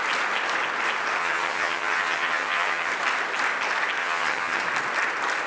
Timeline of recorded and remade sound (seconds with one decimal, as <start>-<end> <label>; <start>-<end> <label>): 0.0-1.2 recorded; 1.2-2.9 remade; 2.9-4.0 recorded; 4.0-4.6 remade; 4.6-5.5 recorded